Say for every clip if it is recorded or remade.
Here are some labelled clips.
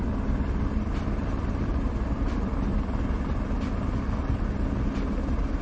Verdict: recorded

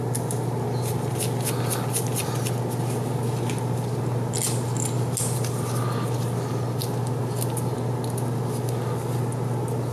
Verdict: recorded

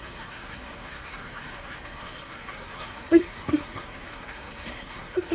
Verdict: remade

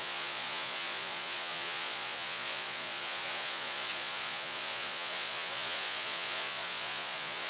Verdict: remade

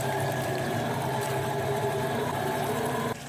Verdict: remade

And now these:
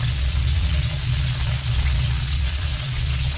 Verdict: remade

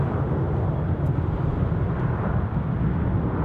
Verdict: recorded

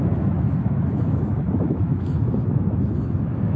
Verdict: remade